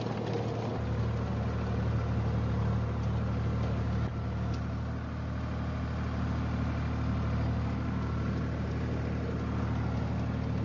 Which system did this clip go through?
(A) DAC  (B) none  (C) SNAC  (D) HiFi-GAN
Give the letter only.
B